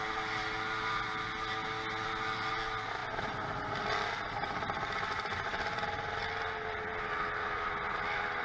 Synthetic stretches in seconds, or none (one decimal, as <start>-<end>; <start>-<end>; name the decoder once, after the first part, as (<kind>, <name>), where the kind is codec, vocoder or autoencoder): none